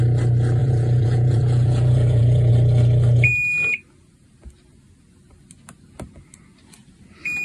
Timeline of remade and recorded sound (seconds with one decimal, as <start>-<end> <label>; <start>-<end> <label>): 0.0-0.6 recorded; 0.6-2.5 remade; 2.5-7.4 recorded